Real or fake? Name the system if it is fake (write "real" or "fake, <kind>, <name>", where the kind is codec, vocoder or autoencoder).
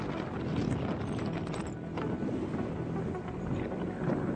real